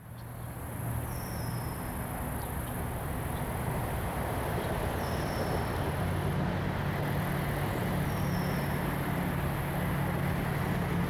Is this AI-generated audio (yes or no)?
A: no